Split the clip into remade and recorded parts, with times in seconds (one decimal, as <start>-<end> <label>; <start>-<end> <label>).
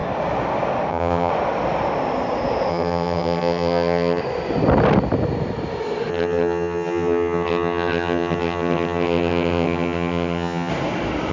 0.0-0.9 recorded; 0.9-1.3 remade; 1.3-2.7 recorded; 2.7-4.2 remade; 4.2-6.1 recorded; 6.1-10.7 remade; 10.7-11.3 recorded